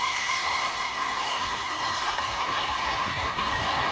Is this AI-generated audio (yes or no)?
yes